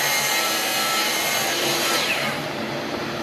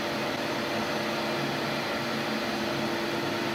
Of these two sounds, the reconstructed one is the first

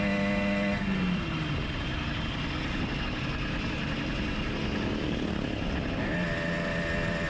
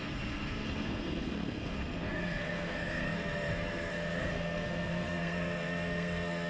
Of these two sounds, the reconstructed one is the second